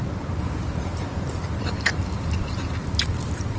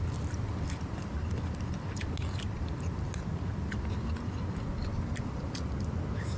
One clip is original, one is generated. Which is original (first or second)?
second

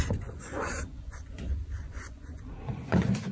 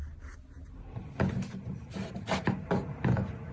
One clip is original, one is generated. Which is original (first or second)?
second